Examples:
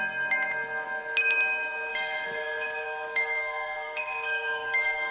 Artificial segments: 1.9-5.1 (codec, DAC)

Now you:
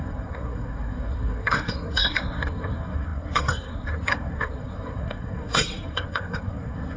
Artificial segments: 0.0-7.0 (codec, SNAC)

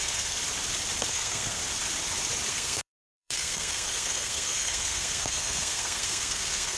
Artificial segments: 0.0-0.4 (codec, SNAC); 1.1-1.6; 2.5-6.8

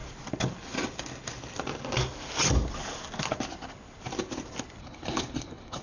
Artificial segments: 4.8-5.8 (codec, HILCodec)

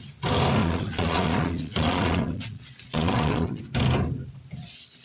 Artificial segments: 0.6-3.6 (vocoder, Vocos)